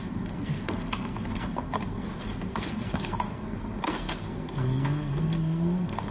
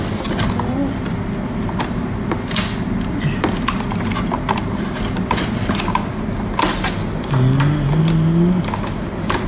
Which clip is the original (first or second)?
second